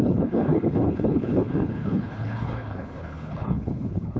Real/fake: fake